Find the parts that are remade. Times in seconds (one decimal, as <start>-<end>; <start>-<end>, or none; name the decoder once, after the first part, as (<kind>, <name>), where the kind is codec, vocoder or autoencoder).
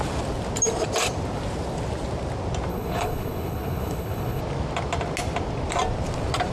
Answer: 2.7-4.4 (codec, HILCodec)